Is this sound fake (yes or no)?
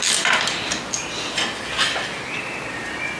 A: no